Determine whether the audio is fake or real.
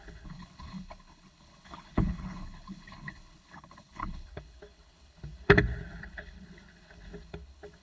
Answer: fake